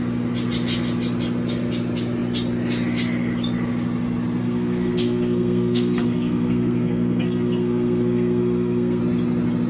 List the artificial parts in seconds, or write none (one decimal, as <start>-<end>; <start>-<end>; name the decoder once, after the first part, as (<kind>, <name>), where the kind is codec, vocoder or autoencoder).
4.4-9.0 (codec, SNAC)